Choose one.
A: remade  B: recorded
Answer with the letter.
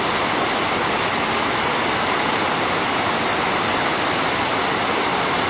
B